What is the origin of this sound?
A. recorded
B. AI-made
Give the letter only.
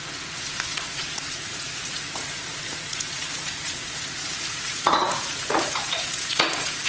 B